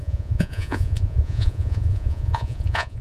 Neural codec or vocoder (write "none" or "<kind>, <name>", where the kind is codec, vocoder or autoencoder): vocoder, Vocos